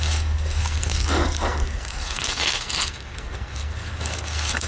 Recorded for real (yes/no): no